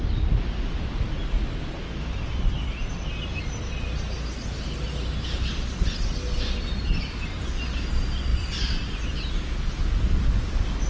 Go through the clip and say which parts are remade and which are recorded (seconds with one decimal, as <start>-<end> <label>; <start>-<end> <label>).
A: 0.0-10.9 recorded